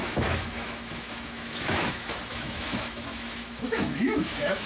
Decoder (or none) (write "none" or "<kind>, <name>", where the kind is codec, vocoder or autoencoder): autoencoder, DAC-VAE